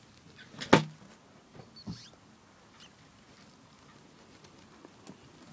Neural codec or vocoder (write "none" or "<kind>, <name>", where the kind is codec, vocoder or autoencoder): none